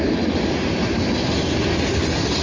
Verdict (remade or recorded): recorded